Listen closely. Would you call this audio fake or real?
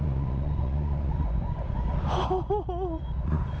fake